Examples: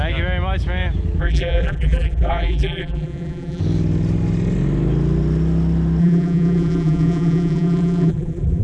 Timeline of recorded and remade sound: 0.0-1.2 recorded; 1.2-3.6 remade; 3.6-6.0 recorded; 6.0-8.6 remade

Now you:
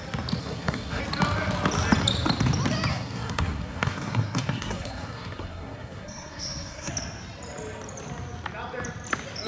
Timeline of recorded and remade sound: 0.0-0.4 recorded; 0.4-1.0 remade; 1.0-2.9 recorded; 2.9-6.9 remade; 6.9-9.5 recorded

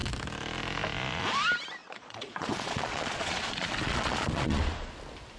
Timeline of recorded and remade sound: 0.0-1.8 recorded; 1.8-4.9 remade; 4.9-5.4 recorded

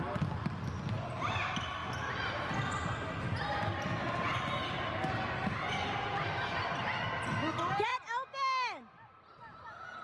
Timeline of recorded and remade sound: 0.0-10.0 recorded

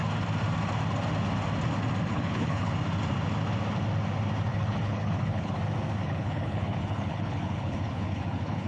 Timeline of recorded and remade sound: 0.0-2.1 recorded; 2.1-2.7 remade; 2.7-4.5 recorded; 4.5-5.6 remade; 5.6-6.0 recorded; 6.0-8.7 remade